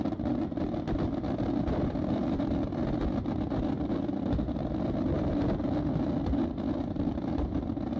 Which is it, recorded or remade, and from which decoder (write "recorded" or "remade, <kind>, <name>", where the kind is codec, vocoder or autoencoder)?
recorded